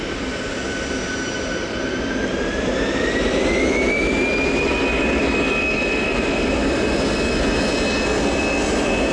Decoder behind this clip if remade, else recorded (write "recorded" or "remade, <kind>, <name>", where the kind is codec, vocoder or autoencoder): recorded